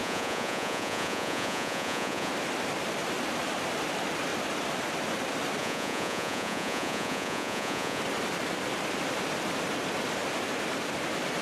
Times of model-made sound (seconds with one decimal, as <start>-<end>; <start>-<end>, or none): 0.0-2.3; 5.6-8.0